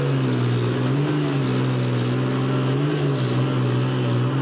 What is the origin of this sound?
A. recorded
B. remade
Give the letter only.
A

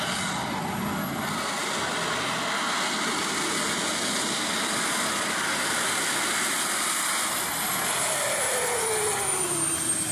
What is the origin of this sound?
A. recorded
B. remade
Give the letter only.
A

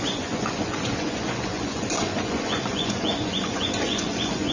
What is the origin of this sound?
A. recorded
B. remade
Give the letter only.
B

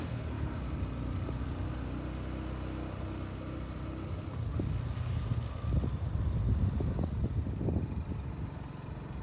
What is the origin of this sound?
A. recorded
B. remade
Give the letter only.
A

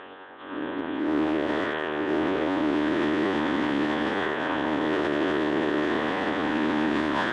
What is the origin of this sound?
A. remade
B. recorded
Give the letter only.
A